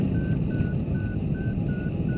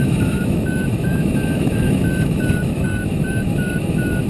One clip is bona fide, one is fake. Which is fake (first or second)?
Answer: second